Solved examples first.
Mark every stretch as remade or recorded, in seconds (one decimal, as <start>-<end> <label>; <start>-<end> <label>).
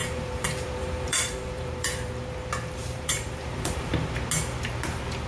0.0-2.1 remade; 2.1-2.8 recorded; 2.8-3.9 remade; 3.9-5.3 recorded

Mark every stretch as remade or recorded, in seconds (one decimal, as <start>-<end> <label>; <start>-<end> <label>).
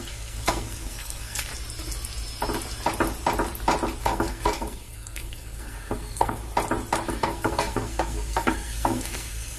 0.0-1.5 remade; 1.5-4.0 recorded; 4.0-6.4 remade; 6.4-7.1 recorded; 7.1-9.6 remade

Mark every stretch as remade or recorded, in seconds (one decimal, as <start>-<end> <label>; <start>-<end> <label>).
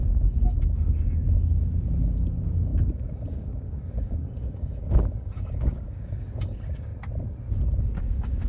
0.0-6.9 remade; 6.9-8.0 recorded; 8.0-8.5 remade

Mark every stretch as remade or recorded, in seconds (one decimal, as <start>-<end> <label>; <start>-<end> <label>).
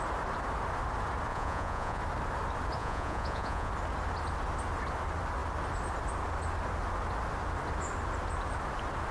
0.0-1.3 recorded; 1.3-2.0 remade; 2.0-2.8 recorded; 2.8-3.7 remade; 3.7-9.1 recorded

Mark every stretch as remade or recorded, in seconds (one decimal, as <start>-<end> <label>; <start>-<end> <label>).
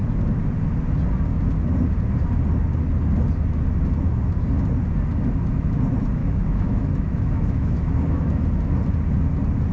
0.0-6.2 recorded; 6.2-8.4 remade; 8.4-9.7 recorded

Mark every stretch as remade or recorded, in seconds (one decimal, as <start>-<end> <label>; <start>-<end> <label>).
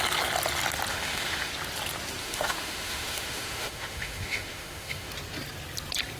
0.0-0.9 recorded; 0.9-1.5 remade; 1.5-2.2 recorded; 2.2-5.1 remade; 5.1-6.2 recorded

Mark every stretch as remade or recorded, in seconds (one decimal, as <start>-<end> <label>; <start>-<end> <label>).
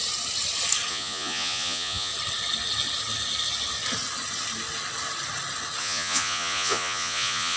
0.0-0.9 recorded; 0.9-2.1 remade; 2.1-5.8 recorded; 5.8-7.6 remade